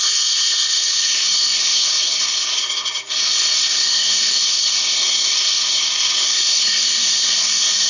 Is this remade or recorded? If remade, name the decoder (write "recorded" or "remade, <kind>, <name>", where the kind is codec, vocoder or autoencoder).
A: remade, codec, SNAC